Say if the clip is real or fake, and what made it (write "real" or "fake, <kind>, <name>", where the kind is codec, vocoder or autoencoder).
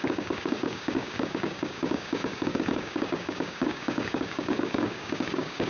fake, codec, DAC